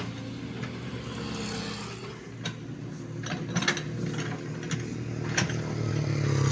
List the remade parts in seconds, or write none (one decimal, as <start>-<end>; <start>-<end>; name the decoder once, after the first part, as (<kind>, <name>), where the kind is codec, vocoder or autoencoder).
none